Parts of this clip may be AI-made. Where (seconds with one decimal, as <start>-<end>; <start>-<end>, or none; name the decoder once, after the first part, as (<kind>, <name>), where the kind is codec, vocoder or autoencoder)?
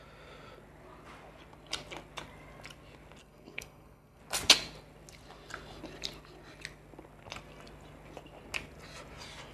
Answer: 3.2-4.2 (codec, SNAC)